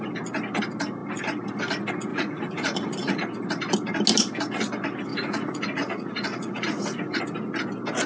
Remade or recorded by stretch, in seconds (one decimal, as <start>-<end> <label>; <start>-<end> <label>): 0.0-2.1 recorded; 2.1-3.2 remade; 3.2-5.1 recorded; 5.1-7.2 remade; 7.2-8.1 recorded